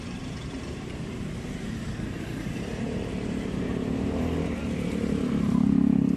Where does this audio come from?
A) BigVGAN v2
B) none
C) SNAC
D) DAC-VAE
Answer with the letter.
A